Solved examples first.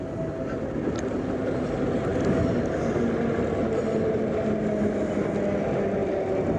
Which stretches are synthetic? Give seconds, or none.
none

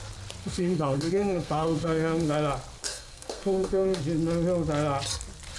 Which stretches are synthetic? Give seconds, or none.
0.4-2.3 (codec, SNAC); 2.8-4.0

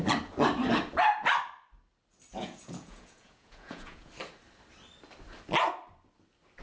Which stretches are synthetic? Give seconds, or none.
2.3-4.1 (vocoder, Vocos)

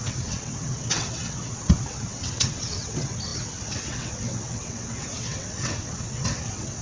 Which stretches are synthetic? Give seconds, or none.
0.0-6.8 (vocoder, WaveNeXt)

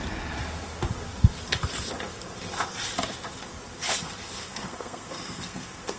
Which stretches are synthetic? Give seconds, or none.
4.4-6.0 (codec, SNAC)

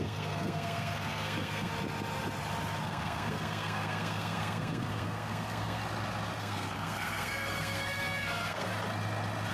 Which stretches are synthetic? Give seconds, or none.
0.0-1.7 (codec, SNAC); 2.8-5.8; 6.4-8.7

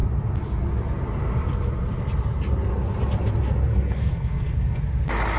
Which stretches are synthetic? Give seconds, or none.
3.7-4.8 (codec, SNAC)